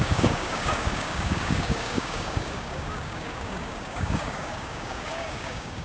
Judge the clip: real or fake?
fake